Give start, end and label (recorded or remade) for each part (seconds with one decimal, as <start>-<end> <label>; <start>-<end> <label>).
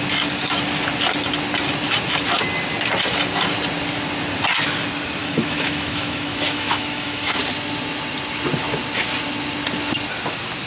0.0-5.2 recorded; 5.2-7.4 remade; 7.4-10.7 recorded